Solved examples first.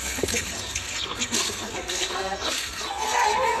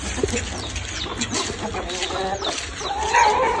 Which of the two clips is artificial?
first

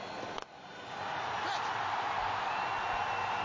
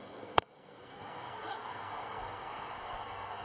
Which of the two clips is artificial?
second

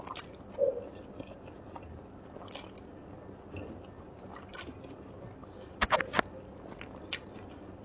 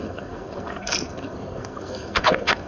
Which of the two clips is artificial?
second